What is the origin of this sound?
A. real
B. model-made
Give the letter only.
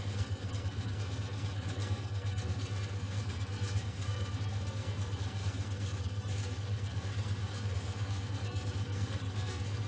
B